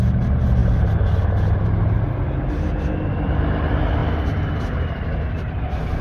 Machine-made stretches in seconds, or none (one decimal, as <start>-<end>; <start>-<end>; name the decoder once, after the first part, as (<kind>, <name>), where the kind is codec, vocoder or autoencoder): none